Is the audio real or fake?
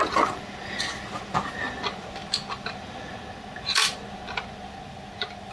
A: real